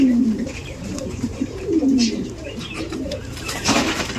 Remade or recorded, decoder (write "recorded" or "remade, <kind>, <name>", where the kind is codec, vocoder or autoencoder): remade, vocoder, BigVGAN v2